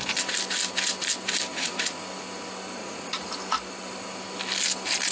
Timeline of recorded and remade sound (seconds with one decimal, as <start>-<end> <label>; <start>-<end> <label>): 0.0-1.5 recorded; 1.5-2.0 remade; 2.0-2.8 recorded; 2.8-3.3 remade; 3.3-5.1 recorded

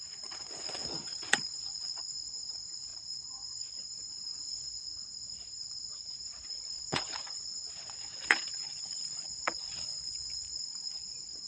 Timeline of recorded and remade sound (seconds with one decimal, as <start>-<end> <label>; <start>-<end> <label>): 0.0-9.9 remade; 9.9-10.5 recorded; 10.5-11.5 remade

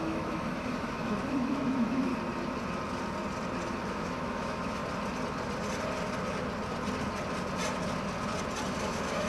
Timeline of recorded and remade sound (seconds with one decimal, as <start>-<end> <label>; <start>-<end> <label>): 0.0-2.1 remade; 2.1-3.8 recorded; 3.8-4.8 remade; 4.8-8.8 recorded; 8.8-9.3 remade

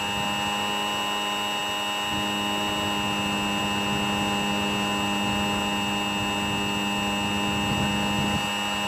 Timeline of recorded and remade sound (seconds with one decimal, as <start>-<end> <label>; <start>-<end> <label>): 0.0-8.9 recorded